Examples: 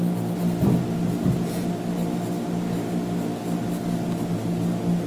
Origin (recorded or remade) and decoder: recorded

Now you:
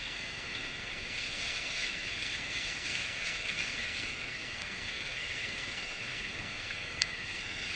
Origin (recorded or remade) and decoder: remade, codec, SNAC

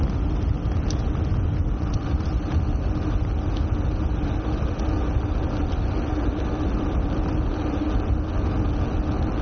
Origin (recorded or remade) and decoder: recorded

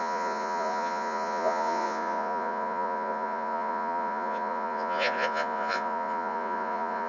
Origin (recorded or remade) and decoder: remade, vocoder, Vocos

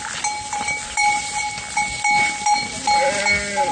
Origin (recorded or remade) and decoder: recorded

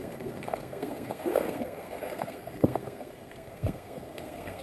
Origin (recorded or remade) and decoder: remade, codec, SNAC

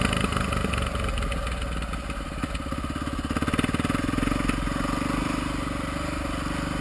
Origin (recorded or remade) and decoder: recorded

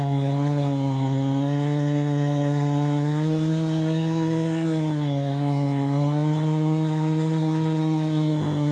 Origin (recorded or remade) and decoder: remade, codec, SNAC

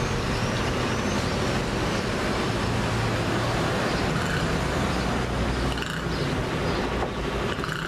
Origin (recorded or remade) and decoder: recorded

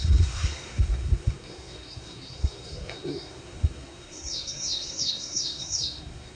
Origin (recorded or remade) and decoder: remade, codec, SNAC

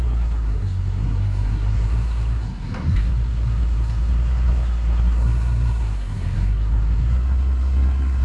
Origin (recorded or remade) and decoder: remade, codec, SNAC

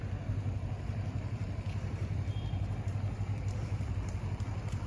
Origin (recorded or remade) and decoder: recorded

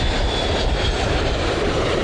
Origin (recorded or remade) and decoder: recorded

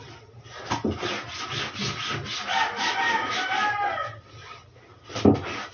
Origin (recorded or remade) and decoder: recorded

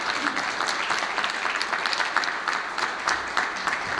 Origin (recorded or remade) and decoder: recorded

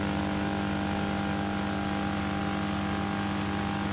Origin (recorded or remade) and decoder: recorded